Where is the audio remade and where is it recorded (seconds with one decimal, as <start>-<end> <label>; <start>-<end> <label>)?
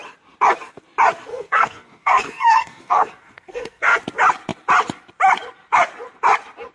0.0-1.3 recorded; 1.3-4.0 remade; 4.0-6.7 recorded